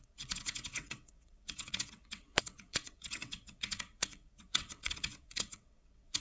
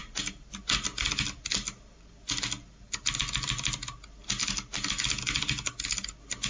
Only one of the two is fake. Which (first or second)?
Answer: first